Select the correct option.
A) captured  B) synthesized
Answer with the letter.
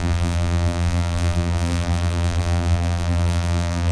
B